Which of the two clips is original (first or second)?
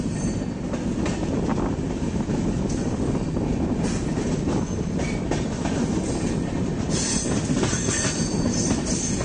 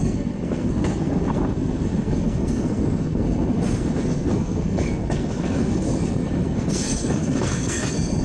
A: first